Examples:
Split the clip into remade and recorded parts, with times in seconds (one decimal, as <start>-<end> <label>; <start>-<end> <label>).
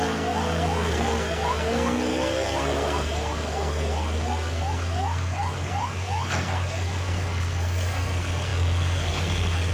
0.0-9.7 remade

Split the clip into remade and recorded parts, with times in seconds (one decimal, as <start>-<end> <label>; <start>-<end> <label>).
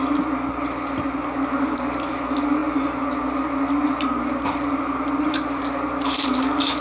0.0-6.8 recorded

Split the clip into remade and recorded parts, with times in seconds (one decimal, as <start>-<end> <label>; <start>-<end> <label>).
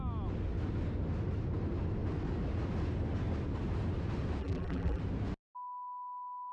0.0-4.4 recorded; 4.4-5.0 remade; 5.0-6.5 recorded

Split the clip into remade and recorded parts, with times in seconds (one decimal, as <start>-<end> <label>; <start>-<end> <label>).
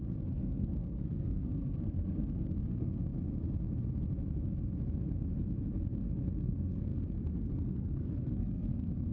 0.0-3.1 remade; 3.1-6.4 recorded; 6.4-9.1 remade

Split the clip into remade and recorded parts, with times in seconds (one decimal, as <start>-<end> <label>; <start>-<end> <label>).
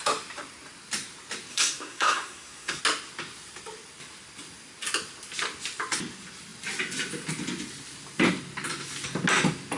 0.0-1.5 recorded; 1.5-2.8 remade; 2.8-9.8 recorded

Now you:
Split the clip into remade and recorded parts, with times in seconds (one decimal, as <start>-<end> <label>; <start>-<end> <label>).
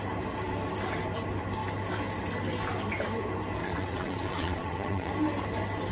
0.0-3.6 recorded; 3.6-5.1 remade; 5.1-5.9 recorded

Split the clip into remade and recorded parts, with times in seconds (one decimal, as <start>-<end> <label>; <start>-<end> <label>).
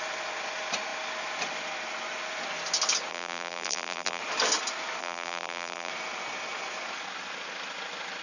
0.0-3.1 recorded; 3.1-4.2 remade; 4.2-5.0 recorded; 5.0-5.9 remade; 5.9-8.2 recorded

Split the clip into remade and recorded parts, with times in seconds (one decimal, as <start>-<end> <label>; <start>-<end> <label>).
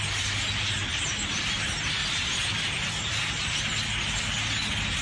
0.0-0.9 recorded; 0.9-1.4 remade; 1.4-2.0 recorded; 2.0-3.6 remade; 3.6-5.0 recorded